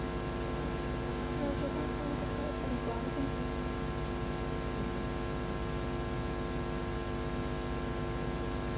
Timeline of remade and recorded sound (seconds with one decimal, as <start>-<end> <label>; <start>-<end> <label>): 0.0-1.1 recorded; 1.1-3.1 remade; 3.1-8.8 recorded